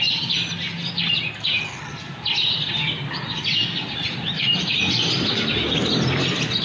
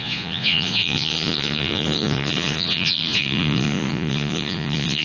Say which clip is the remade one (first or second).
second